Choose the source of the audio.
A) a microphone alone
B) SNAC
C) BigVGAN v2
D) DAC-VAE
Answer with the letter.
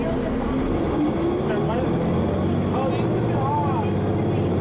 A